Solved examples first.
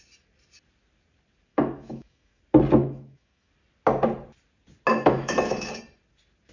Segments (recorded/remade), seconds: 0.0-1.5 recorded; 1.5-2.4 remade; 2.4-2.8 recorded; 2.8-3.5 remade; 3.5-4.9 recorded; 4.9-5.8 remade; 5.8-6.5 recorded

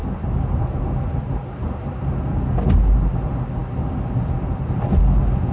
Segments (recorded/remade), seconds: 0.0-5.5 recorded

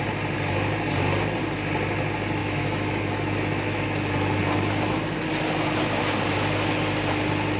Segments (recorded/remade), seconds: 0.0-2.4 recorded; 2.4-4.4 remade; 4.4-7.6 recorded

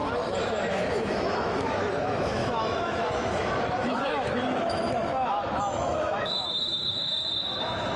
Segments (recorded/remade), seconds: 0.0-0.7 recorded; 0.7-7.1 remade; 7.1-7.6 recorded; 7.6-8.0 remade